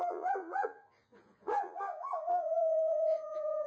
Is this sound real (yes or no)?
no